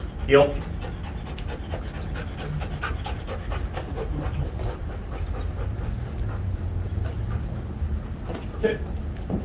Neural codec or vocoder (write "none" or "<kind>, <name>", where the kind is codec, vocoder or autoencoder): none